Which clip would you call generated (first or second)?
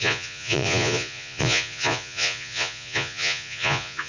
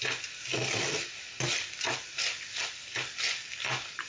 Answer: first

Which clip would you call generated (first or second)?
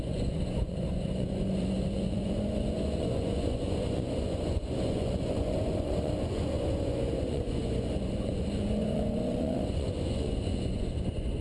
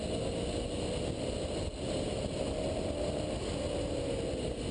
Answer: first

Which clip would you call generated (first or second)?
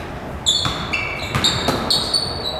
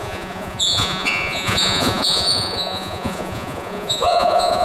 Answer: second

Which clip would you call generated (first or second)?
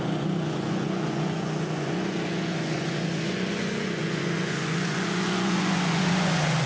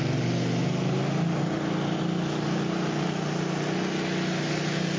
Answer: first